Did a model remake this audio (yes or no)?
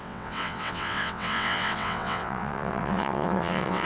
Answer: yes